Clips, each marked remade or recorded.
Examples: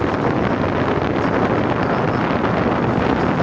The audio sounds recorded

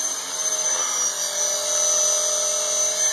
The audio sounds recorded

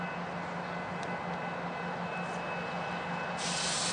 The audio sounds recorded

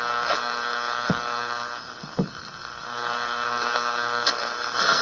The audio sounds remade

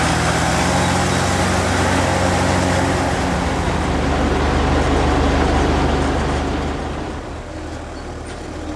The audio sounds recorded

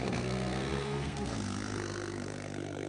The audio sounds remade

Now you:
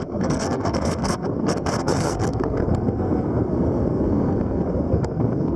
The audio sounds remade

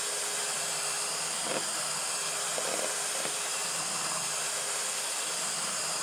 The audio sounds recorded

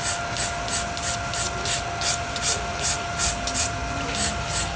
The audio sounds recorded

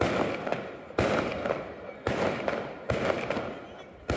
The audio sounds recorded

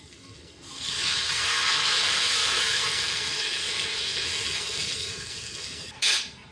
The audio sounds remade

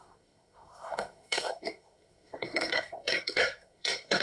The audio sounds remade